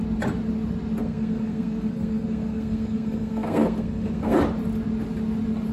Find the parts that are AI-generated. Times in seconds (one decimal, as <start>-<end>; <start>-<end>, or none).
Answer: 1.0-4.4